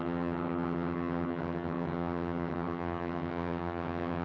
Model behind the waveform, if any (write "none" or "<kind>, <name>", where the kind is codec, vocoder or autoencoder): vocoder, HiFi-GAN